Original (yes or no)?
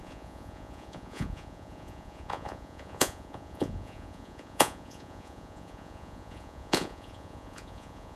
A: no